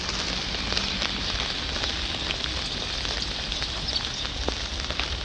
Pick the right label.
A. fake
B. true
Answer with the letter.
B